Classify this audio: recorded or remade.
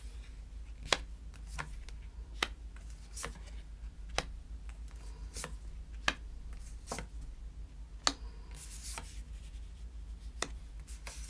recorded